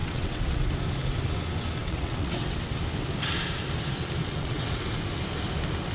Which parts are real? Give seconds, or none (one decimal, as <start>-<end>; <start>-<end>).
0.6-1.8; 2.8-4.2; 4.8-5.9